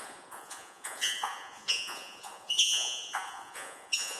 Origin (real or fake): fake